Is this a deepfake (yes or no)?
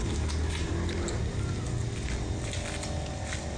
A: no